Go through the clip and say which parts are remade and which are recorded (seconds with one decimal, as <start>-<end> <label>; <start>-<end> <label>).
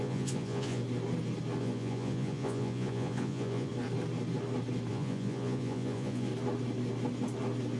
0.0-0.8 remade; 0.8-1.6 recorded; 1.6-3.7 remade; 3.7-4.9 recorded; 4.9-6.3 remade; 6.3-7.8 recorded